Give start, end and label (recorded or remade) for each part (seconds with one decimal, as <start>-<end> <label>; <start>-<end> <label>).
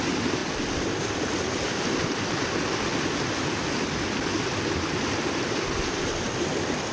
0.0-6.9 recorded